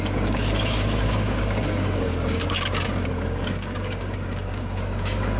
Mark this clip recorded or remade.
remade